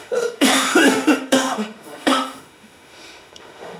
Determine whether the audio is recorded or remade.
remade